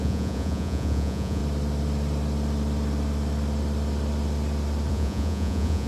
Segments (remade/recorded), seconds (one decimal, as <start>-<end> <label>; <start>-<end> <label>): 0.0-1.4 remade; 1.4-4.9 recorded; 4.9-5.9 remade